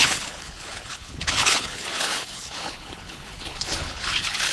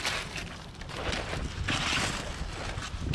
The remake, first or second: first